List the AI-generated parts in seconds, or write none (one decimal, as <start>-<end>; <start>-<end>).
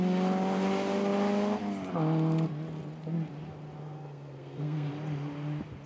3.8-4.9